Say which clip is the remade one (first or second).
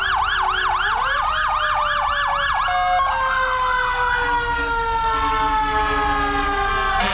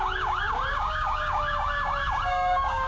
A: second